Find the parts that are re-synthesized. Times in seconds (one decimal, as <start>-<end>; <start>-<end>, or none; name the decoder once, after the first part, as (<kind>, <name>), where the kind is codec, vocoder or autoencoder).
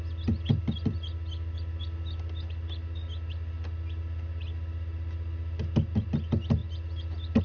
none